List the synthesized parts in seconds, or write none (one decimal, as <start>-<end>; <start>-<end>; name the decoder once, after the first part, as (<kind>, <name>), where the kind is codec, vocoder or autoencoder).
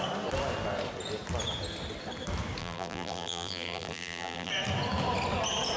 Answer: 2.6-4.5 (vocoder, BigVGAN v2)